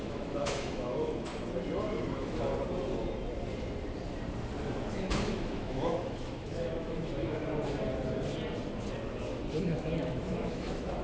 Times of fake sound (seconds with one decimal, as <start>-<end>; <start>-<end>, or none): 0.0-1.3; 1.9-2.5; 4.9-7.4; 9.6-11.0

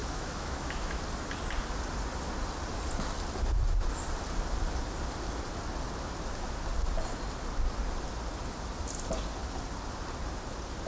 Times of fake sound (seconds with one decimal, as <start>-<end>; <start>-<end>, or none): 0.0-1.0

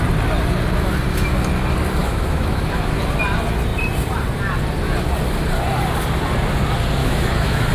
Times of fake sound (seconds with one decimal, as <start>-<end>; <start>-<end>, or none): 2.0-3.0; 7.0-7.7

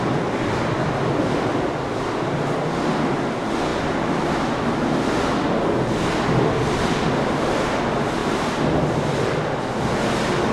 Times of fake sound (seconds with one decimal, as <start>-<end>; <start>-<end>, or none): none

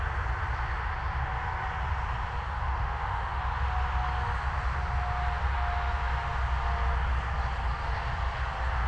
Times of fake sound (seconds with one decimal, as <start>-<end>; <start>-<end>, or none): 2.6-3.4

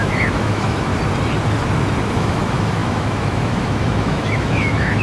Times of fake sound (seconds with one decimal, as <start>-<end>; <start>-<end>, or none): 0.0-0.9; 2.1-5.0

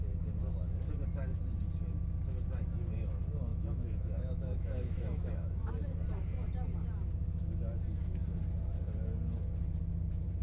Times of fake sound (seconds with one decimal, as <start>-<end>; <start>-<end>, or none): 3.5-5.7

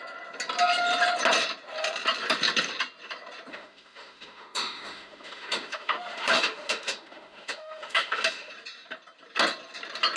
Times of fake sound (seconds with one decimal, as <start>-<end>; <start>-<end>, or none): 3.5-8.5